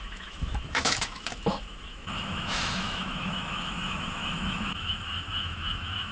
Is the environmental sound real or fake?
fake